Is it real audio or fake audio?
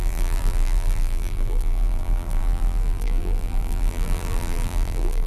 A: fake